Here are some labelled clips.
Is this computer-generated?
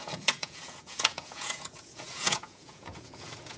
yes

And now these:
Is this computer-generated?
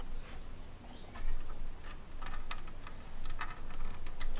no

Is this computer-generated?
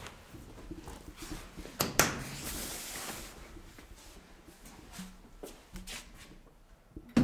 no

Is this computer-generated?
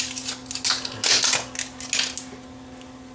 no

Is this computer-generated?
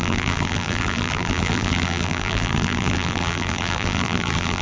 yes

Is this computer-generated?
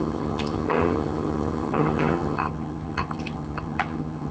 yes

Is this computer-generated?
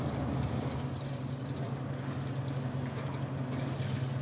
no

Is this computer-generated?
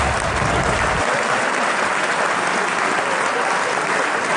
no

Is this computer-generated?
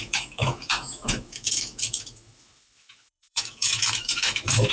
yes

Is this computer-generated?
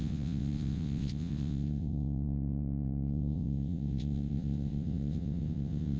yes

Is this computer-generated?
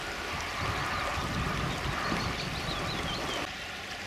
no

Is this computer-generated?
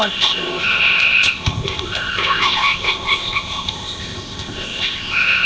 yes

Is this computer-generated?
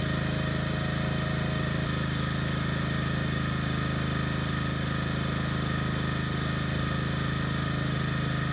no